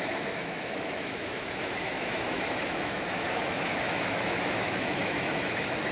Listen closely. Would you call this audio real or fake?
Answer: fake